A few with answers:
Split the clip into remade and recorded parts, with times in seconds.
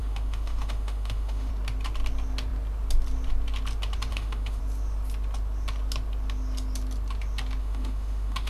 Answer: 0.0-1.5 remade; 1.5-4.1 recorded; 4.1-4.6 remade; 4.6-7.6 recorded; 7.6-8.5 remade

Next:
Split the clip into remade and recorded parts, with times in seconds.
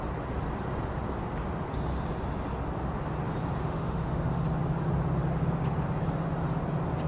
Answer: 0.0-3.6 recorded; 3.6-4.4 remade; 4.4-7.1 recorded